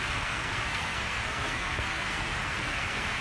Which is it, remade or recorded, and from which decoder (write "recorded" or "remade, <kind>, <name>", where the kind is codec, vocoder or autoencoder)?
remade, codec, SNAC